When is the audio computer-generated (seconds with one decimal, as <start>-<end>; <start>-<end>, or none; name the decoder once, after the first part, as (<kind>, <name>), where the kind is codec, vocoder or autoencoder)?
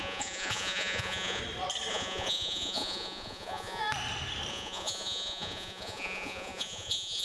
0.0-1.4 (vocoder, Vocos); 1.9-3.8; 4.5-7.2